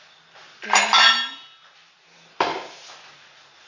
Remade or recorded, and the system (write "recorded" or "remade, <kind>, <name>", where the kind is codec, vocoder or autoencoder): recorded